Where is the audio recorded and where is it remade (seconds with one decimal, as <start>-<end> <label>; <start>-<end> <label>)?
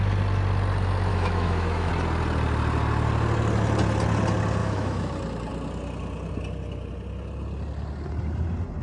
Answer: 0.0-1.1 recorded; 1.1-1.9 remade; 1.9-4.6 recorded; 4.6-5.1 remade; 5.1-8.8 recorded